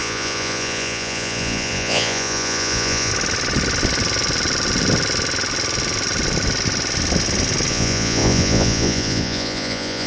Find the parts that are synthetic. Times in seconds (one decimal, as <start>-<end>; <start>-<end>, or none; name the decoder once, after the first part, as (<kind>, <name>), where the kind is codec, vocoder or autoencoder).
0.0-3.1 (vocoder, Vocos); 7.7-10.1